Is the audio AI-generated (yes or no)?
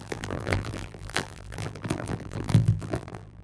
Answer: yes